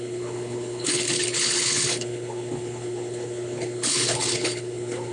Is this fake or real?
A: fake